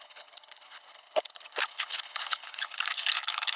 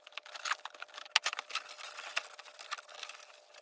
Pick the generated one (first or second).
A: first